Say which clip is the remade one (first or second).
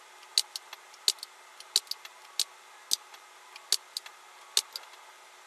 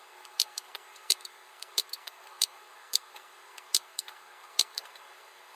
second